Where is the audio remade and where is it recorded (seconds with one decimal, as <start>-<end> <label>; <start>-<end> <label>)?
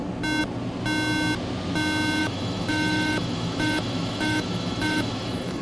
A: 0.0-2.2 recorded; 2.2-5.6 remade